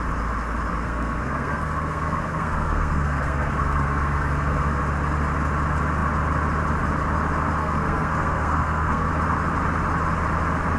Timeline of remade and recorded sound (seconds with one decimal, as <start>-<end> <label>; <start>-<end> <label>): 0.0-0.7 recorded; 0.7-4.8 remade; 4.8-7.6 recorded; 7.6-9.1 remade; 9.1-10.8 recorded